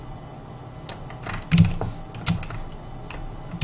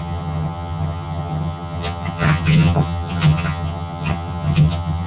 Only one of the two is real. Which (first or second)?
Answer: first